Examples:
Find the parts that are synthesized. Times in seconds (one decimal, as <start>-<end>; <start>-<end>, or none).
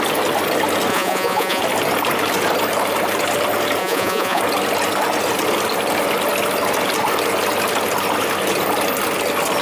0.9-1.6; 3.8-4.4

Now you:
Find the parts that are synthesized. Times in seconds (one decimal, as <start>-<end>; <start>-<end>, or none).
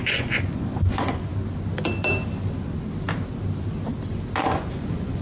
0.0-1.3; 4.4-5.2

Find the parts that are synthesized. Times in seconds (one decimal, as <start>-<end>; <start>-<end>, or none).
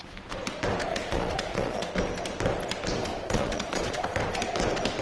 0.9-1.9; 3.1-4.2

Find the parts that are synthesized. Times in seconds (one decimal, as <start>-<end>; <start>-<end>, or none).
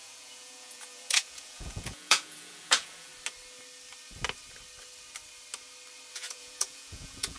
0.0-3.1; 6.1-7.4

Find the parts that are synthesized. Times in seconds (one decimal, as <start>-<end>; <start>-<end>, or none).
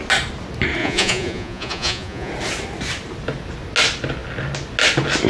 0.8-2.3